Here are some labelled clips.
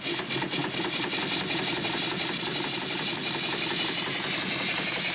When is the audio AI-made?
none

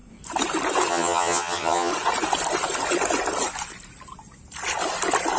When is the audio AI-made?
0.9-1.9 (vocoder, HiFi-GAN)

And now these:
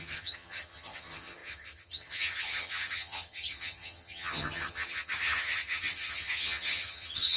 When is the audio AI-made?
0.0-7.4 (vocoder, HiFi-GAN)

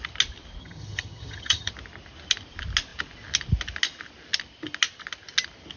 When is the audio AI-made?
0.6-1.7 (vocoder, HiFi-GAN)

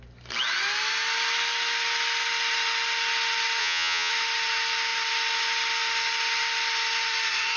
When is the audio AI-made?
3.6-4.1 (vocoder, HiFi-GAN)